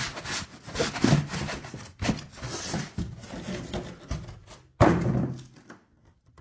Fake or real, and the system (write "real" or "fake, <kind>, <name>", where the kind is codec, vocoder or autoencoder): real